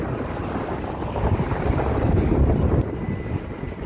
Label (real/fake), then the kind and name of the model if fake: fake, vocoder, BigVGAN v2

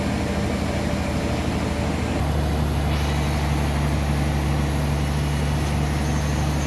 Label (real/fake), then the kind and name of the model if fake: real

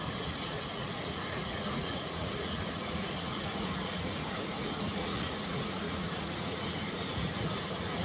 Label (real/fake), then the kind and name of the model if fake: fake, vocoder, Vocos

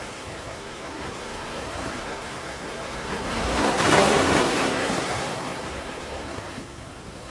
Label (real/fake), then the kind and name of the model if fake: fake, codec, SNAC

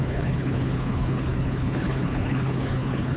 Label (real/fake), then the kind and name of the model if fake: fake, codec, HILCodec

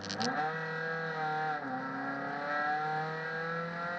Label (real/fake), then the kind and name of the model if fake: real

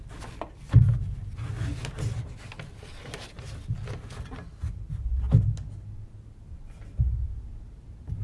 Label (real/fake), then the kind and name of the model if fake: real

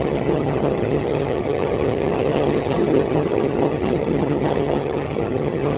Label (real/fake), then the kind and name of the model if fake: fake, vocoder, HiFi-GAN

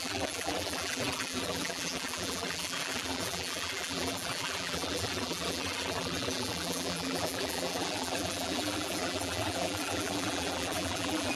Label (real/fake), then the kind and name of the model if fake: fake, vocoder, BigVGAN v2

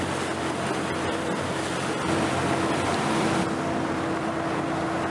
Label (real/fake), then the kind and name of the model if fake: real